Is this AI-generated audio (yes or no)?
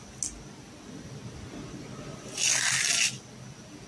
no